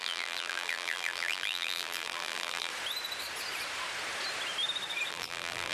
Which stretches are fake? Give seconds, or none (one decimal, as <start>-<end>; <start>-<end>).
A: 0.0-2.7; 5.1-5.7